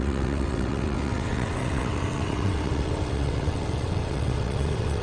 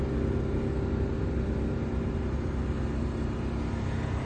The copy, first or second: first